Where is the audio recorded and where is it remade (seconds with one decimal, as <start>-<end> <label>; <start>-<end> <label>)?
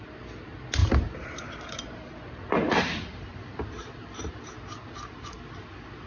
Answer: 0.0-0.8 recorded; 0.8-4.5 remade; 4.5-6.1 recorded